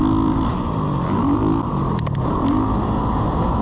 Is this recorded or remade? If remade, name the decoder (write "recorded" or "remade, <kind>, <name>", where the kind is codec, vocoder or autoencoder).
recorded